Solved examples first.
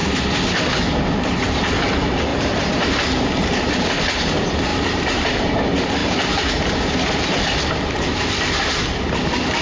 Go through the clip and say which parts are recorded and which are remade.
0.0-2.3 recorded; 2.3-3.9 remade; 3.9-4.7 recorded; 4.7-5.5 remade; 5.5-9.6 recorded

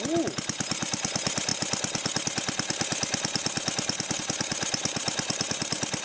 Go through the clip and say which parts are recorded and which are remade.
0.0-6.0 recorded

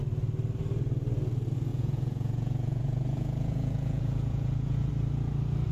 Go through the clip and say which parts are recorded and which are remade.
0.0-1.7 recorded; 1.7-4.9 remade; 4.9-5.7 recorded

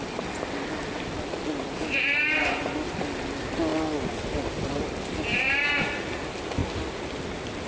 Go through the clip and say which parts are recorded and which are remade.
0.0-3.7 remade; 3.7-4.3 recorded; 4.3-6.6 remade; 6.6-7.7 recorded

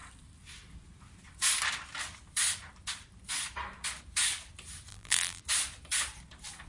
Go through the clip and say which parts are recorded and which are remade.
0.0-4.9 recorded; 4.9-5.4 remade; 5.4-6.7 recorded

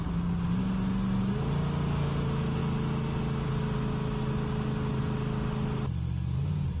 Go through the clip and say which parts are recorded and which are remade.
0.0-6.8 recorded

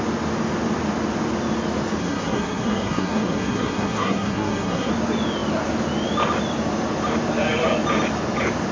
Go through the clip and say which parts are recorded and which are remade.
0.0-2.0 recorded; 2.0-4.9 remade; 4.9-8.7 recorded

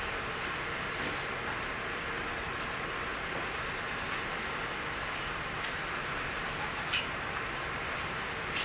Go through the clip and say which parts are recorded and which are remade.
0.0-8.6 recorded